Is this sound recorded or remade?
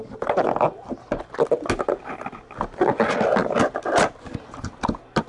recorded